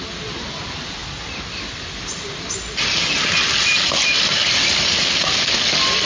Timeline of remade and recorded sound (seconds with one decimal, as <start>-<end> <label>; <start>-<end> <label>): 0.0-6.1 recorded

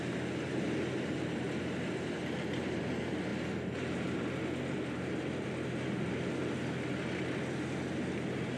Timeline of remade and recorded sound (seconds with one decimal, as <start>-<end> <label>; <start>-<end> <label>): 0.0-8.6 recorded

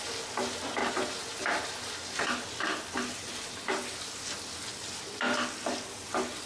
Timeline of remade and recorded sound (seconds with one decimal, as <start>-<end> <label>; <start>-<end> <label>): 0.0-6.5 recorded